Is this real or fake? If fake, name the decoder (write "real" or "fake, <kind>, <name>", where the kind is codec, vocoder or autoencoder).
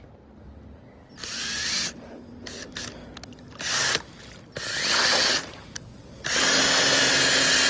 real